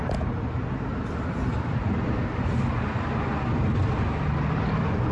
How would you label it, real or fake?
fake